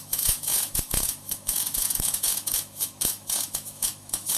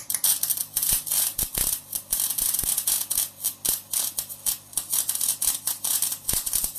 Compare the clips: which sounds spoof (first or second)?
first